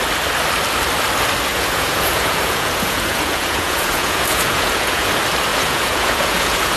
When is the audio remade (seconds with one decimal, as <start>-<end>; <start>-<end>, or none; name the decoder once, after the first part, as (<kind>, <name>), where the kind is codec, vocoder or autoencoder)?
1.5-5.1 (vocoder, Vocos); 5.5-6.8